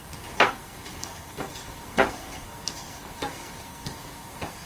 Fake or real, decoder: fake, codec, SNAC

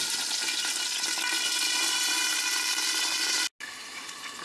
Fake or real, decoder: real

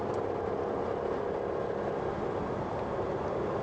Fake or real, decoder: real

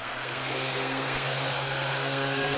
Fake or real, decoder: fake, codec, SNAC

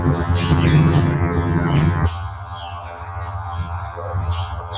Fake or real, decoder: fake, vocoder, HiFi-GAN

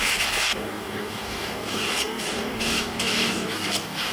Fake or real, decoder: fake, codec, DAC